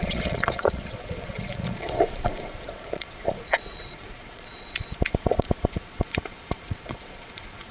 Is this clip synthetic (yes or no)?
yes